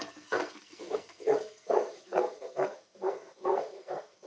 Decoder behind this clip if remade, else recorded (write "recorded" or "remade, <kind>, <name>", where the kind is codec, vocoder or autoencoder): remade, codec, SNAC